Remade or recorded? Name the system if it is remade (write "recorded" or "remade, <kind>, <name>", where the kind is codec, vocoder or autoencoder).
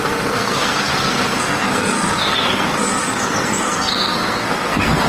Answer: remade, codec, SNAC